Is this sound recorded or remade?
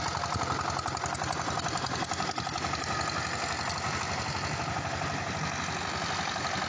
recorded